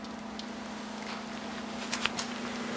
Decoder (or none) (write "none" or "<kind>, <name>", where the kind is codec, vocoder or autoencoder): none